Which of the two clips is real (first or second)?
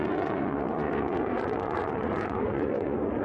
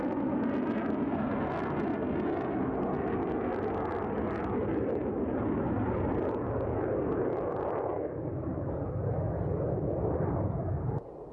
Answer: second